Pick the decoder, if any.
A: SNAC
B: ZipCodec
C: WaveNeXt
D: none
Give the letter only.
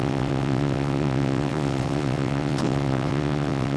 C